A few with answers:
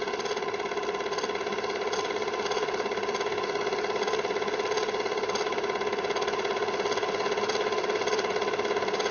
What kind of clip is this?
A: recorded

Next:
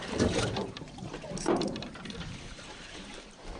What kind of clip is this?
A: remade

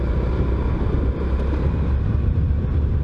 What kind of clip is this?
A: recorded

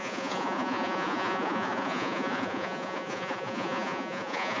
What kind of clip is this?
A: remade